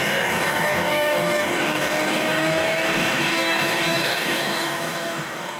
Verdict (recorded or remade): remade